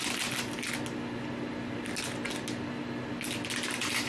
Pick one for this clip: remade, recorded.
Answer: recorded